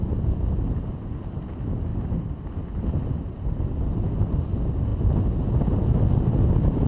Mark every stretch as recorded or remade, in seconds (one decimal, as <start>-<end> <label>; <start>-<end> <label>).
0.0-6.9 recorded